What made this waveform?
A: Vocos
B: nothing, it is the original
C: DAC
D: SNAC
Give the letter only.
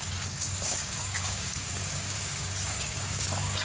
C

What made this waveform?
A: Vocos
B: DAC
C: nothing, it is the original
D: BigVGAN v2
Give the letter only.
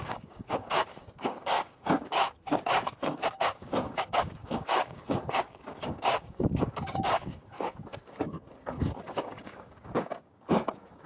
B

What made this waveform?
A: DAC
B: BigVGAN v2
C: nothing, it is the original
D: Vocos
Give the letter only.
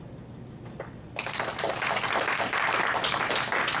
C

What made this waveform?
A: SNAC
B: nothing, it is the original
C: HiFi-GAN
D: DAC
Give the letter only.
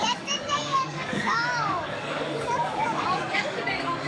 D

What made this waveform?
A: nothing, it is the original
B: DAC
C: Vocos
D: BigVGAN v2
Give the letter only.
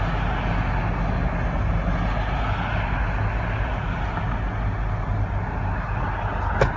A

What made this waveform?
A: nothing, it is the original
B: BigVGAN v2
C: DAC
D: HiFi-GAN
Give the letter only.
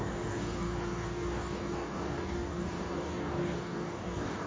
C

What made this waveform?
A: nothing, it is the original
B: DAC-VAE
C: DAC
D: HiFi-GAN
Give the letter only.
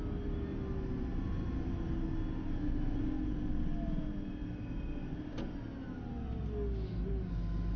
A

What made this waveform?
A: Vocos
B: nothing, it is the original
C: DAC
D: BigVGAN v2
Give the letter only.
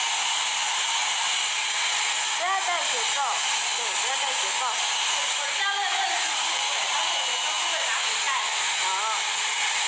B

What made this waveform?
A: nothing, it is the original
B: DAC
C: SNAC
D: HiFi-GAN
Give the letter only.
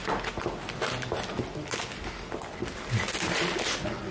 A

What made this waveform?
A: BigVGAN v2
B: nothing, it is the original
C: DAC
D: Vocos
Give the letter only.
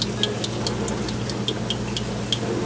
B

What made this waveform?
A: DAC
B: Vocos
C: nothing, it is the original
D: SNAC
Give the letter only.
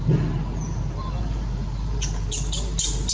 C